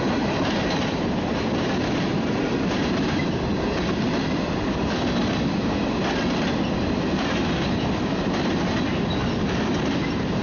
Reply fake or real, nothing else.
real